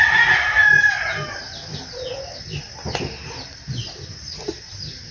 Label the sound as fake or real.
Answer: real